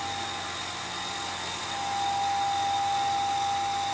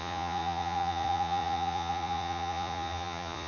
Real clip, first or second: first